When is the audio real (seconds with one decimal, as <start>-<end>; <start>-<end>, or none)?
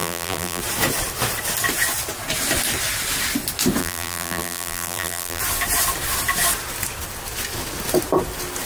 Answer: 0.6-3.8; 5.4-8.7